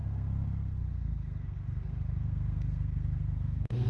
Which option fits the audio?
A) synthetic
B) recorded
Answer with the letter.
A